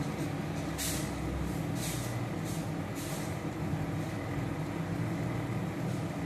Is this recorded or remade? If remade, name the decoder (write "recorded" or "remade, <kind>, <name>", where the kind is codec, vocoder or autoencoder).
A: recorded